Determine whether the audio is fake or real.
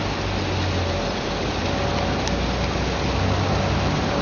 real